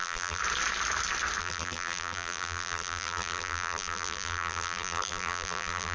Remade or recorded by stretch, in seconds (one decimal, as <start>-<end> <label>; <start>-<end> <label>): 0.0-0.4 remade; 0.4-1.4 recorded; 1.4-5.9 remade